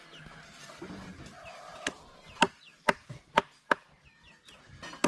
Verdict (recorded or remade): recorded